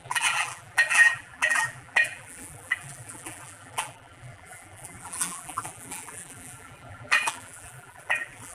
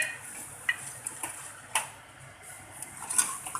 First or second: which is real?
second